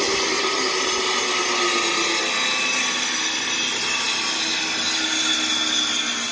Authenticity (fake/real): real